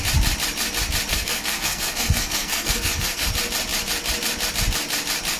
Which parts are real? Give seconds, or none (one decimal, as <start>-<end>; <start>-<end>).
0.0-1.1; 3.3-5.4